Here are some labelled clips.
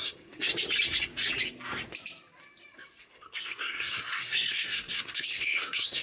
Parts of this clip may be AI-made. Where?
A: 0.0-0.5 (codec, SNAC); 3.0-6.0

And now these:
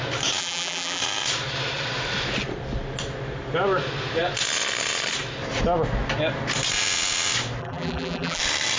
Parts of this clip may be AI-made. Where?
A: 0.4-1.0 (vocoder, BigVGAN v2); 7.6-8.4